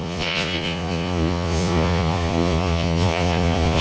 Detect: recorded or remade remade